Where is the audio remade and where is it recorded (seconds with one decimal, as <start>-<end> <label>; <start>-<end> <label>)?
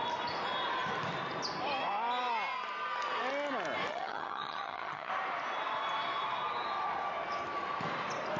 0.0-3.9 recorded; 3.9-5.1 remade; 5.1-8.4 recorded